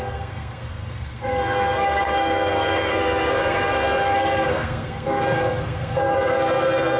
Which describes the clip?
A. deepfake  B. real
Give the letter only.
A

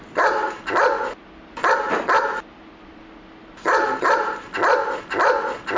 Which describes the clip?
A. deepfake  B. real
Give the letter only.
B